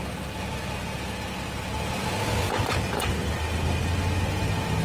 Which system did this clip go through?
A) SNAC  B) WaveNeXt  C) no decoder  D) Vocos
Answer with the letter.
C